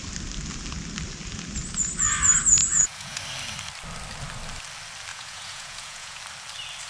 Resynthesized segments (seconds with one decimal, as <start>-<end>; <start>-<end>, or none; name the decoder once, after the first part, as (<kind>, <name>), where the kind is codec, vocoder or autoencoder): 2.6-3.2 (vocoder, Vocos); 5.1-6.2